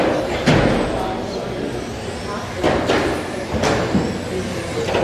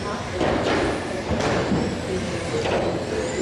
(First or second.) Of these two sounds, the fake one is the second